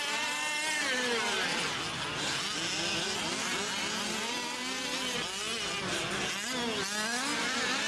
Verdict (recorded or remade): recorded